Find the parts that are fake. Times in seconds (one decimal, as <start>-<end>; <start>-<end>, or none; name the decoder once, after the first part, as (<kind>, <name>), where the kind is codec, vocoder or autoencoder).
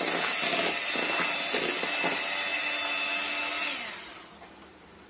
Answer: none